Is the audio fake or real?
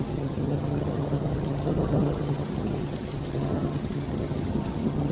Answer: fake